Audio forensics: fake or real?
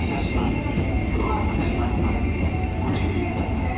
real